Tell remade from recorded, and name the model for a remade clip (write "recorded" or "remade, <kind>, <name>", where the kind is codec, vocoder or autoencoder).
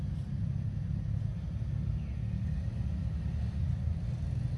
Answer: recorded